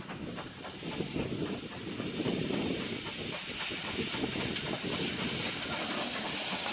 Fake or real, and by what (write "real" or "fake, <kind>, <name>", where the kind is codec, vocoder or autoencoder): real